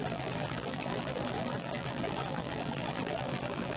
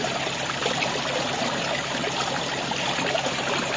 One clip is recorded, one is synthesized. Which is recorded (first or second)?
second